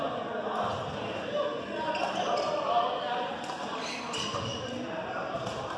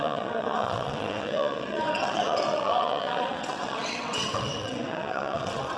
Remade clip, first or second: second